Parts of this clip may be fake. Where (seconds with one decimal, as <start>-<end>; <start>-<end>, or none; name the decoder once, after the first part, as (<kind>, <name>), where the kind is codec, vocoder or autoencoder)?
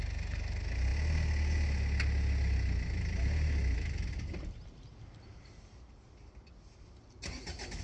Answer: none